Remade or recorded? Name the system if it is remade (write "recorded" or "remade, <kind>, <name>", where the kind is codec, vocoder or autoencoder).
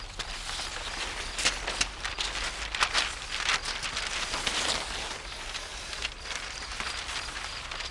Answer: recorded